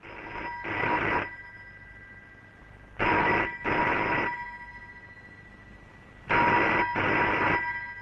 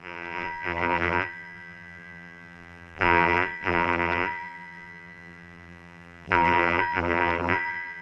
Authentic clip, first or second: first